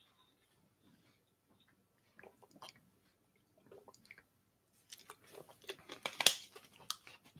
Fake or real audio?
real